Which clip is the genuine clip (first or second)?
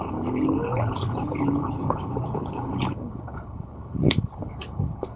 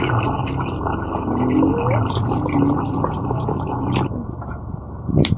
second